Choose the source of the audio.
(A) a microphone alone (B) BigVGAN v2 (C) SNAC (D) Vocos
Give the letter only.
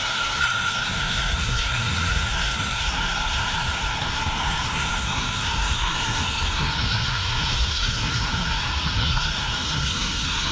C